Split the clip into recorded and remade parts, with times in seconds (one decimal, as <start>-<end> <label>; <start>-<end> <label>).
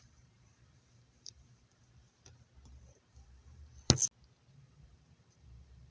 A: 0.0-1.8 remade; 1.8-2.8 recorded; 2.8-3.7 remade; 3.7-4.5 recorded; 4.5-5.9 remade